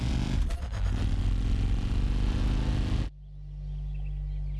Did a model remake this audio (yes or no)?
no